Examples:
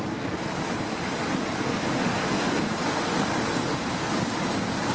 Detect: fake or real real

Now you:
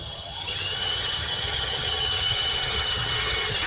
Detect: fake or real fake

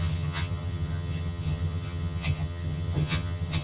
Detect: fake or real fake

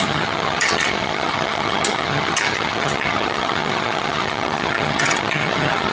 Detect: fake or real fake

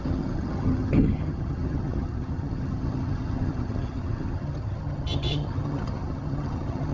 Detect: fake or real fake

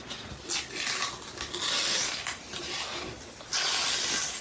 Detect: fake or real real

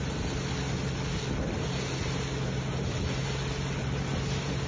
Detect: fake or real real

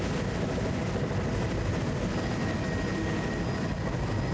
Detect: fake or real real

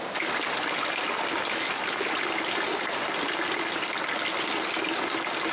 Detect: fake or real real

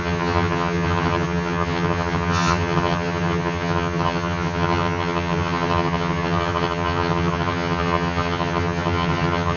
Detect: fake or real fake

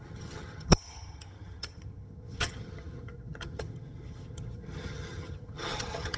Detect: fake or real fake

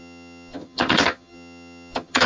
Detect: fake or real fake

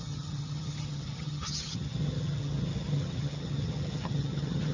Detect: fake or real fake